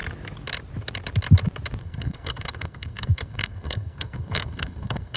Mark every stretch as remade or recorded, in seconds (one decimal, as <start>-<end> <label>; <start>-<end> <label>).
0.0-1.8 recorded; 1.8-5.2 remade